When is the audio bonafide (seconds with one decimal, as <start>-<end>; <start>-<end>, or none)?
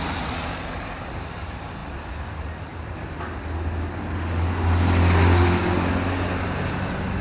0.0-7.2